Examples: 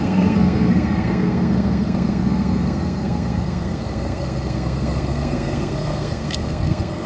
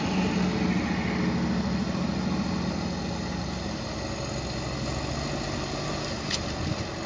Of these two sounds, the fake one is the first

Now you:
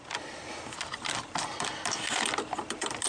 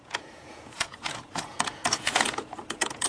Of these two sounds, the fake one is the second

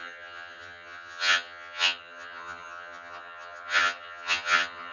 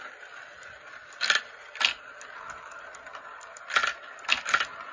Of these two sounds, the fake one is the first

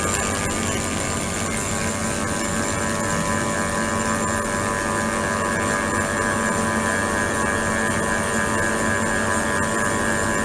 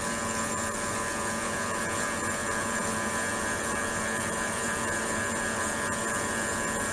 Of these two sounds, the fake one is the second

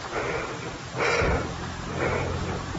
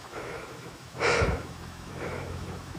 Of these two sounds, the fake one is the second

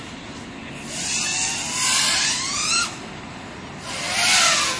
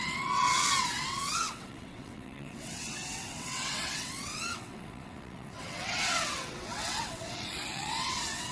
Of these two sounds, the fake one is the second